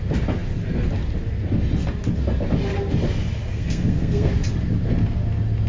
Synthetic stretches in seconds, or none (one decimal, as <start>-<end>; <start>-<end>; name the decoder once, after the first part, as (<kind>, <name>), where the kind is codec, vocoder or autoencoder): 3.5-4.3 (codec, SNAC)